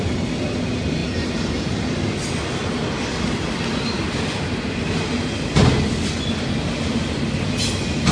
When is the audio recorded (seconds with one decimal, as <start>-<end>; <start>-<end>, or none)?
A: 0.0-8.1